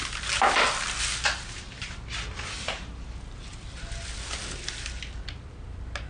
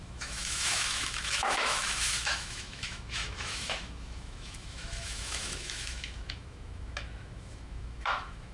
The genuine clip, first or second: first